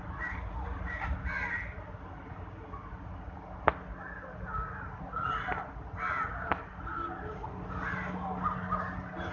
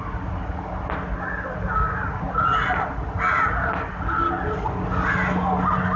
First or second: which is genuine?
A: second